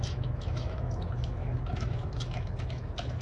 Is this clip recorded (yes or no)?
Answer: no